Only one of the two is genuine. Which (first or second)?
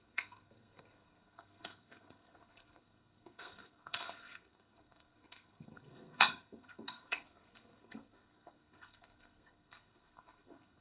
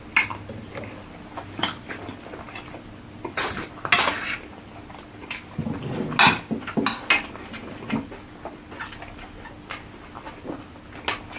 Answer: second